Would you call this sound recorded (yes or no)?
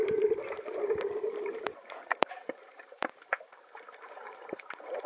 no